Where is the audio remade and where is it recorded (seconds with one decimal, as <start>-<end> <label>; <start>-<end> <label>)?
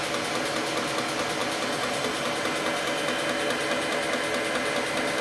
0.0-5.2 recorded